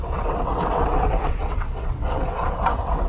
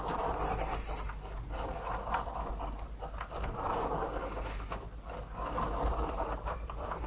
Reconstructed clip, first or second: first